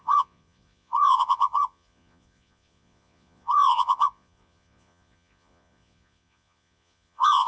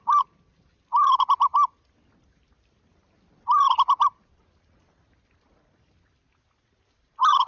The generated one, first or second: first